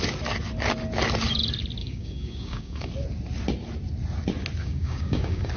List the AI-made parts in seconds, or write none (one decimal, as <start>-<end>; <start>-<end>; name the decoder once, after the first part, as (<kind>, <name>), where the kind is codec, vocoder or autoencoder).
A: 1.8-2.9 (codec, DAC); 4.6-5.6